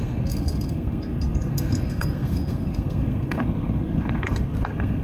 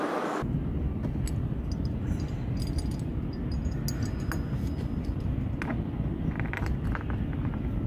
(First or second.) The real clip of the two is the second